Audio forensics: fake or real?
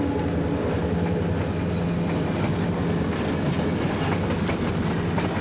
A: real